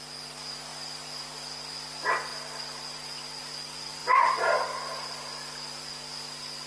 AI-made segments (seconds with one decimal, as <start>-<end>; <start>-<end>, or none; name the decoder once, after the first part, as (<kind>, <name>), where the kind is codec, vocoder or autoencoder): 2.3-3.4 (vocoder, BigVGAN v2); 4.0-5.9

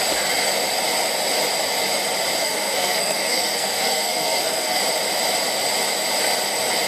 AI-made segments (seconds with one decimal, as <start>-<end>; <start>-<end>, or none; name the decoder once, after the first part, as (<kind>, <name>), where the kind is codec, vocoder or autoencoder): 2.4-4.8 (codec, SNAC)